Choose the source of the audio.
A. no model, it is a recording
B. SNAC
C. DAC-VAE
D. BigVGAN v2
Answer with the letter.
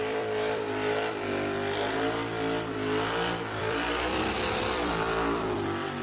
D